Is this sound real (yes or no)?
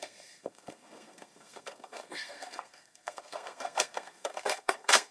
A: no